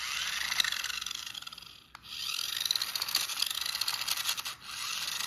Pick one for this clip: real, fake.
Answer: real